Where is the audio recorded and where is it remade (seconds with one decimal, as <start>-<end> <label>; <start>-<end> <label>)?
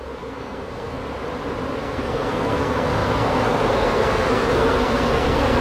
0.0-1.0 remade; 1.0-1.8 recorded; 1.8-5.6 remade